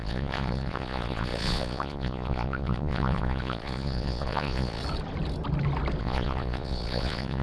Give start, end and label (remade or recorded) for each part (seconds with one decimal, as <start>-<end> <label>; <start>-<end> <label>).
0.0-4.8 remade; 4.8-6.0 recorded; 6.0-7.4 remade